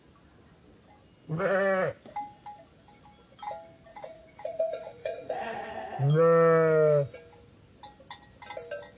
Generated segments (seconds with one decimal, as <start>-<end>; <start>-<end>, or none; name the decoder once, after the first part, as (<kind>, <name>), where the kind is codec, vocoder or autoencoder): 3.9-5.7 (vocoder, Vocos)